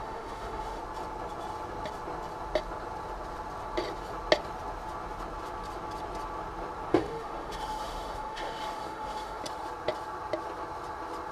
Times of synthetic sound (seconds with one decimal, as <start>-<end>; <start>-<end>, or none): 0.0-0.8; 6.9-9.4